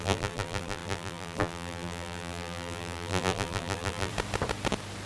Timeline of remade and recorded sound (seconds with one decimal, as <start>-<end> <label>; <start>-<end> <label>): 0.0-4.1 remade; 4.1-5.1 recorded